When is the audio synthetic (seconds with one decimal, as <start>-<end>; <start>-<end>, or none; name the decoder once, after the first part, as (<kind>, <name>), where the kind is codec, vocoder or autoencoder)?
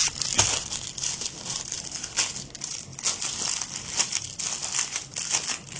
none